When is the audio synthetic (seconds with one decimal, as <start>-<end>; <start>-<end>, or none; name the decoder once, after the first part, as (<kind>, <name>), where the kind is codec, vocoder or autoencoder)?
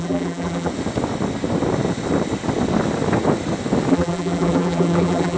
0.0-0.7 (vocoder, BigVGAN v2); 3.9-5.4